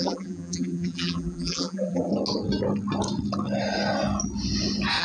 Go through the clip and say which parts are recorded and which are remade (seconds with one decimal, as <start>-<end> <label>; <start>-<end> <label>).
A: 0.0-2.1 remade; 2.1-5.0 recorded